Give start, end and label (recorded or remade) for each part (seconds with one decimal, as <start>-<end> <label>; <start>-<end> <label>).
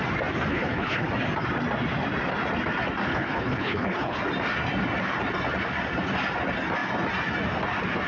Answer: 0.0-0.5 recorded; 0.5-1.1 remade; 1.1-3.1 recorded; 3.1-4.2 remade; 4.2-8.1 recorded